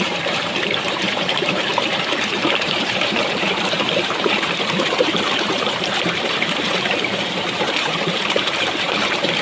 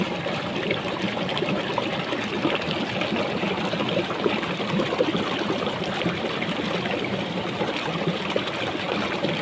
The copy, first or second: first